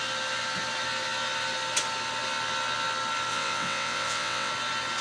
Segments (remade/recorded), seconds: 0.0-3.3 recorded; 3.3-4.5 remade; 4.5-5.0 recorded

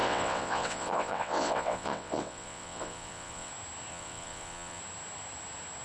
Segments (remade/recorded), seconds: 0.0-3.5 remade; 3.5-3.9 recorded; 3.9-4.8 remade; 4.8-5.8 recorded

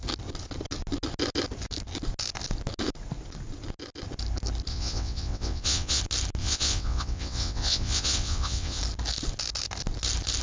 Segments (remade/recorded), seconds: 0.0-4.7 recorded; 4.7-6.0 remade; 6.0-6.4 recorded; 6.4-8.8 remade; 8.8-10.4 recorded

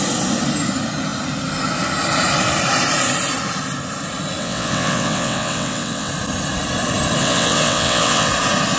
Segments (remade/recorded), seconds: 0.0-4.4 recorded; 4.4-6.1 remade; 6.1-7.2 recorded; 7.2-8.3 remade; 8.3-8.8 recorded

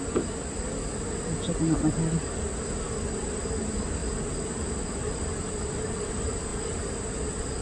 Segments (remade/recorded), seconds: 0.0-7.6 recorded

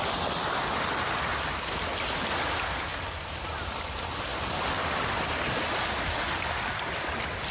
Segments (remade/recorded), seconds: 0.0-7.5 recorded

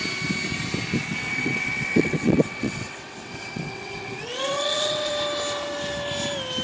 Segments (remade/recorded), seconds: 0.0-1.1 recorded; 1.1-5.1 remade; 5.1-6.6 recorded